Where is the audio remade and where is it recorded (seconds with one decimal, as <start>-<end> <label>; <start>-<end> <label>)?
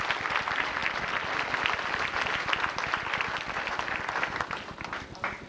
0.0-5.5 recorded